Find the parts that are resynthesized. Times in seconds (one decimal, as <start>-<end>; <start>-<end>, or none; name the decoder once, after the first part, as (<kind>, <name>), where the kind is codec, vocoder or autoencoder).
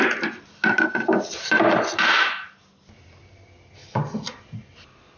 none